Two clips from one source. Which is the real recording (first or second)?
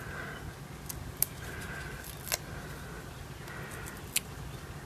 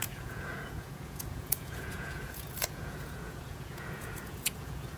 first